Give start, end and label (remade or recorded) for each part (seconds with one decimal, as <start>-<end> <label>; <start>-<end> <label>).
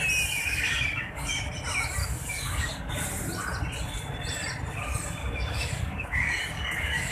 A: 0.0-0.4 recorded; 0.4-1.5 remade; 1.5-2.0 recorded; 2.0-2.9 remade; 2.9-5.2 recorded; 5.2-7.1 remade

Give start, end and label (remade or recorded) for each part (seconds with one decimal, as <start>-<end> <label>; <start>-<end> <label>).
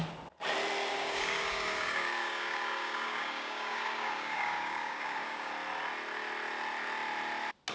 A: 0.0-0.9 recorded; 0.9-5.5 remade; 5.5-7.7 recorded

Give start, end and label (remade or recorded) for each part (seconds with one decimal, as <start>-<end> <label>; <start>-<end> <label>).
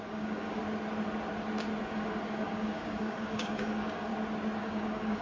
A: 0.0-0.6 remade; 0.6-1.8 recorded; 1.8-4.1 remade; 4.1-4.6 recorded; 4.6-5.2 remade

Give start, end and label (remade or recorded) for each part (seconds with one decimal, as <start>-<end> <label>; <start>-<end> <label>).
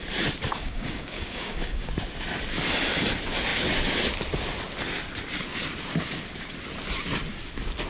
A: 0.0-0.5 recorded; 0.5-1.9 remade; 1.9-7.9 recorded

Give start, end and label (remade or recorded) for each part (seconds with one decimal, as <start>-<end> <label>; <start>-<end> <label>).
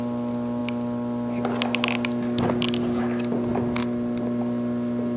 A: 0.0-5.2 recorded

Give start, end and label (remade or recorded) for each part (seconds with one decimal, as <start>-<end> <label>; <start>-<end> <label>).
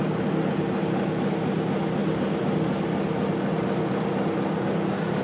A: 0.0-5.2 recorded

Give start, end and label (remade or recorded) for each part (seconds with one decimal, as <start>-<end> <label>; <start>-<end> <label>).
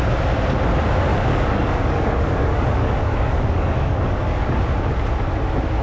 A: 0.0-1.1 recorded; 1.1-4.6 remade; 4.6-5.8 recorded